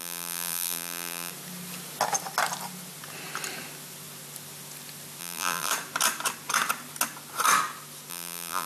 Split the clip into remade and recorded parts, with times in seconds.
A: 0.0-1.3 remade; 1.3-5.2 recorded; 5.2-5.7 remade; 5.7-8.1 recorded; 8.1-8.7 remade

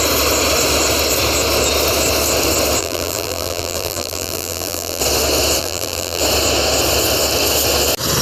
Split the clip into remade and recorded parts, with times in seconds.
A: 0.0-2.8 recorded; 2.8-5.0 remade; 5.0-5.6 recorded; 5.6-6.2 remade; 6.2-8.2 recorded

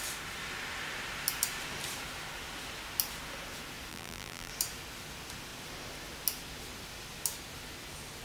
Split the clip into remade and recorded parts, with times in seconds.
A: 0.0-3.9 recorded; 3.9-4.5 remade; 4.5-8.2 recorded

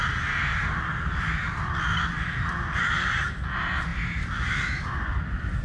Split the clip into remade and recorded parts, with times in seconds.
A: 0.0-5.6 recorded

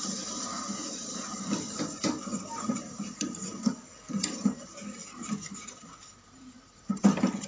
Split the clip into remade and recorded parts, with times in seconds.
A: 0.0-3.5 remade; 3.5-4.1 recorded; 4.1-7.5 remade

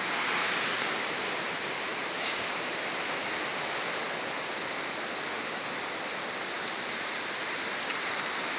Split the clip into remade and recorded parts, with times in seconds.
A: 0.0-1.9 recorded; 1.9-2.8 remade; 2.8-8.6 recorded

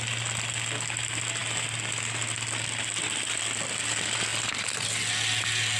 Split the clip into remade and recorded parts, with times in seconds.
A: 0.0-5.8 recorded